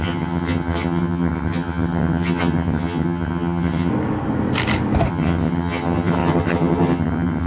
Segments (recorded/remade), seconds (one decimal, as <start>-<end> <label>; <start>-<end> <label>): 0.0-3.9 remade; 3.9-5.1 recorded; 5.1-7.5 remade